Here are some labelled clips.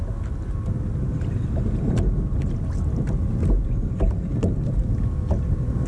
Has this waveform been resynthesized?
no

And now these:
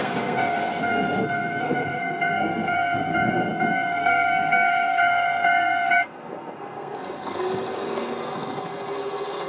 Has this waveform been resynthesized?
yes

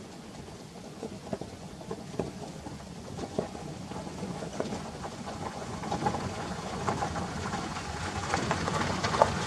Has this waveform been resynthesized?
yes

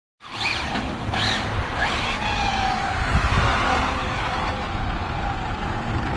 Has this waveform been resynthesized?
no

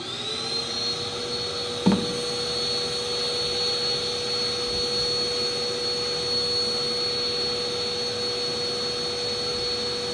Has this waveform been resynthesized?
no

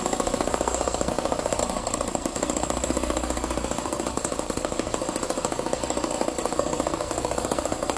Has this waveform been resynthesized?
yes